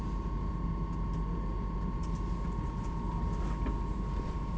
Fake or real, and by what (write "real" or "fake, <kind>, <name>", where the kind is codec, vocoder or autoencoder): real